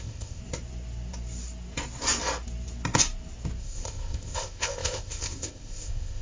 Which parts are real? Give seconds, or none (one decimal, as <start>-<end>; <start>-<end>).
0.4-3.6